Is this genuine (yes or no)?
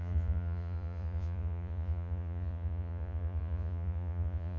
no